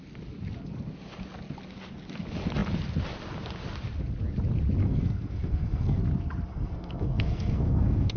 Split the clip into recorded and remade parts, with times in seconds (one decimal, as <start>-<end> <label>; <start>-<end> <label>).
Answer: 0.0-4.8 recorded; 4.8-6.0 remade; 6.0-6.5 recorded; 6.5-8.2 remade